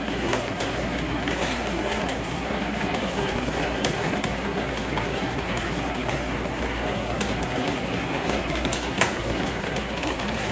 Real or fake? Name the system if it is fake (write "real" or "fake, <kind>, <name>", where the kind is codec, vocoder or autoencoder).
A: fake, codec, SNAC